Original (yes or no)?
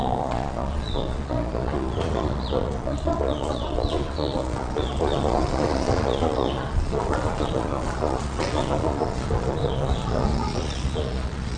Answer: no